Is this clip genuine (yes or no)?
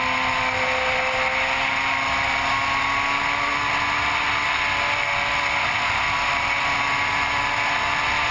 yes